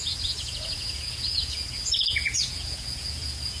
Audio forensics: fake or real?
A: fake